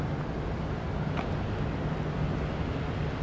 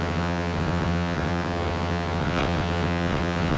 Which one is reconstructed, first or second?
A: second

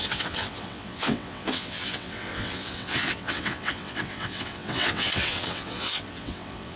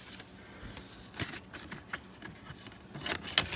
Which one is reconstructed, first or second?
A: first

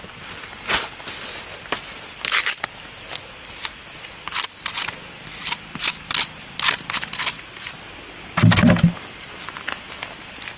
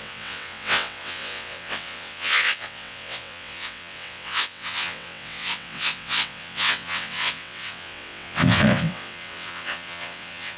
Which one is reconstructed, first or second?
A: second